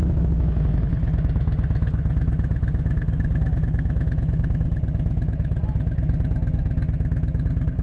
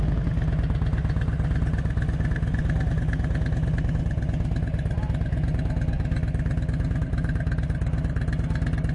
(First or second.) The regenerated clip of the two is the first